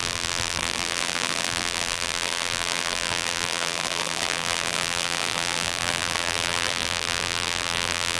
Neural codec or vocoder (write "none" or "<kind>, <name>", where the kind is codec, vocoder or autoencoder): vocoder, BigVGAN v2